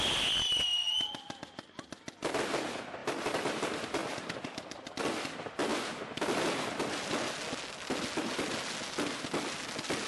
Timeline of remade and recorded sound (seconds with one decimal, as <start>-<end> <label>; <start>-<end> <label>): 0.0-10.1 recorded